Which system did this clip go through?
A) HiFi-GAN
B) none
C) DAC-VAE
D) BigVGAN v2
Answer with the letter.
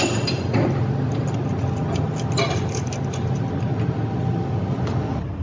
B